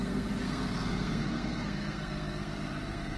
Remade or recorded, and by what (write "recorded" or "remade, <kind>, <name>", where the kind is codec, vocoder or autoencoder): remade, codec, SNAC